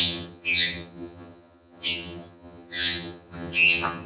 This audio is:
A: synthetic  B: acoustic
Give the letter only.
A